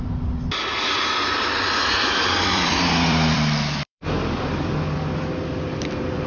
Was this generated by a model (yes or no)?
yes